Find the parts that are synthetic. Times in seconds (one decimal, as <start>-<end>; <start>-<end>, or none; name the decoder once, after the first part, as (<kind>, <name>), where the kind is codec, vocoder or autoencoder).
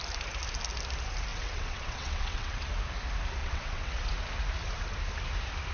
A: 1.3-2.7 (vocoder, WaveNeXt); 3.4-4.1